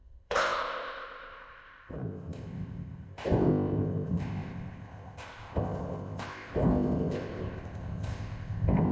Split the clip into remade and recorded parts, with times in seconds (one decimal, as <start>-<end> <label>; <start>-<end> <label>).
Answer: 0.0-8.9 remade